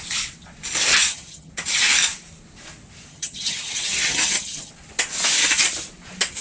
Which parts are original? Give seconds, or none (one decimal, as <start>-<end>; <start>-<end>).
0.0-0.9; 1.5-3.1; 4.7-6.4